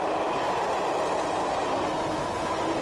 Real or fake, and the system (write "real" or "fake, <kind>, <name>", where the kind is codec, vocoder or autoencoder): real